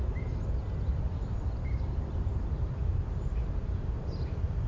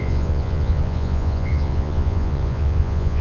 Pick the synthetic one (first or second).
second